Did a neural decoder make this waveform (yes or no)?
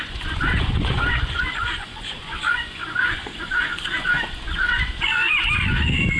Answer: yes